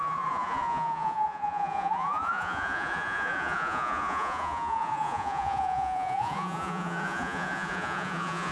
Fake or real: fake